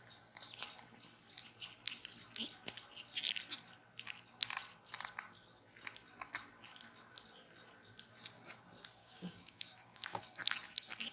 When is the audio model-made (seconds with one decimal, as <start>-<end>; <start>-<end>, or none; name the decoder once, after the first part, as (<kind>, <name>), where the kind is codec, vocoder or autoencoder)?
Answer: 9.0-10.2 (codec, DAC)